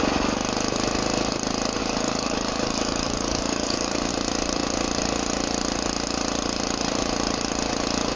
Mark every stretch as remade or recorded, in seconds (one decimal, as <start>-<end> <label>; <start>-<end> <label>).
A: 0.0-1.8 recorded; 1.8-4.1 remade; 4.1-8.2 recorded